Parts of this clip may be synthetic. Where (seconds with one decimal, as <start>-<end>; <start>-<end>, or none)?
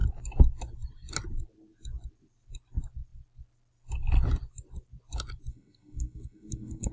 5.5-6.9